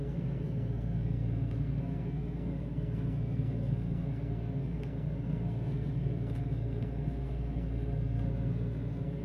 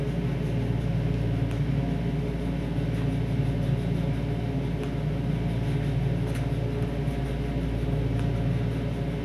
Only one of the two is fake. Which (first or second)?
first